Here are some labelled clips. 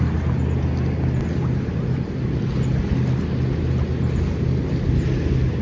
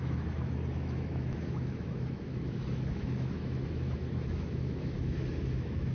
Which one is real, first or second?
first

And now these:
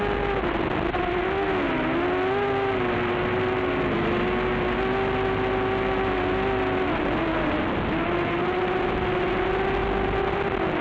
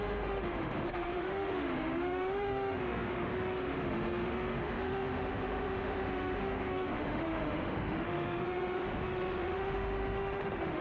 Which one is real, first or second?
first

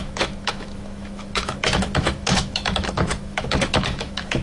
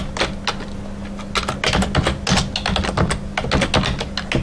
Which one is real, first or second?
second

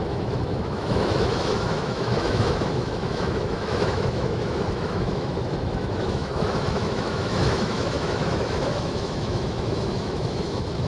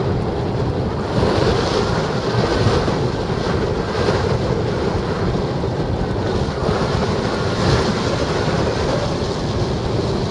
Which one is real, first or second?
second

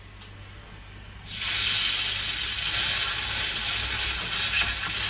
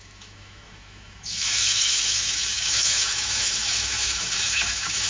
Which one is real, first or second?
first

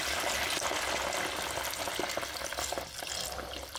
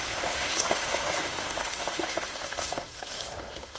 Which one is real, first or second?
first